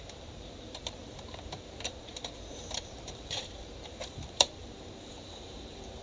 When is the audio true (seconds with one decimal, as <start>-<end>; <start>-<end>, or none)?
none